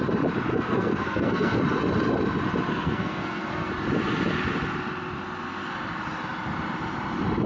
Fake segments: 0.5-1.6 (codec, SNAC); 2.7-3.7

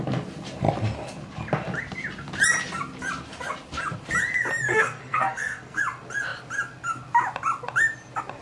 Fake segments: 4.7-5.8 (codec, SNAC)

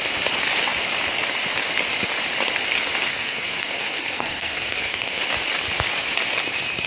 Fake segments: 3.1-5.2 (codec, SNAC)